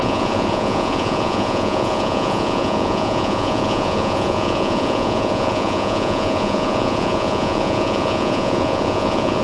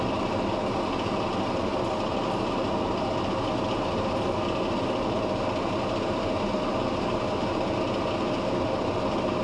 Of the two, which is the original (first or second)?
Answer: second